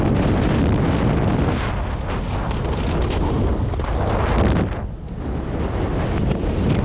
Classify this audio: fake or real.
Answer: real